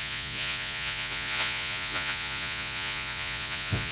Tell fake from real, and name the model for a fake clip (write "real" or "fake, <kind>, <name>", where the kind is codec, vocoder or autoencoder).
fake, vocoder, Vocos